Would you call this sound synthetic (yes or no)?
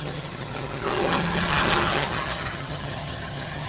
yes